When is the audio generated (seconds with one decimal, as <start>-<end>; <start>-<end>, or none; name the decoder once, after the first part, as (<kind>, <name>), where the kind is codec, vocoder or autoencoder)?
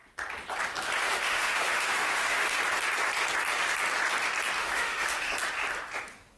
1.1-2.6 (autoencoder, DAC-VAE); 4.6-5.3